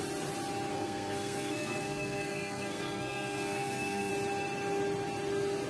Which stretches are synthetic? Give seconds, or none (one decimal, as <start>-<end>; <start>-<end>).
0.7-4.1